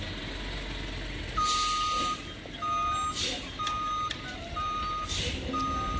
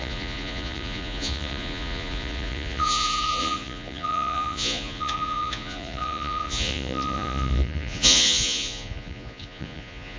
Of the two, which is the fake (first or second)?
second